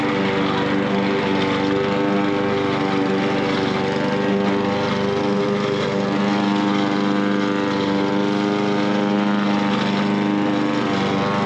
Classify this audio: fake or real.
real